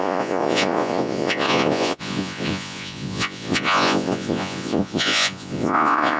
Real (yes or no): no